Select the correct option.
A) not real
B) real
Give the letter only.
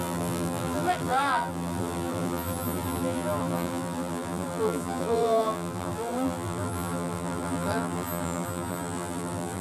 A